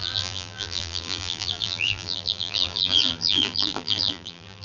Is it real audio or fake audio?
fake